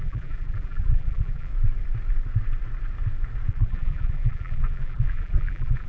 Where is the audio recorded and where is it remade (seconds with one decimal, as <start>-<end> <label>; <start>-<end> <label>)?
0.0-1.5 remade; 1.5-3.5 recorded; 3.5-5.9 remade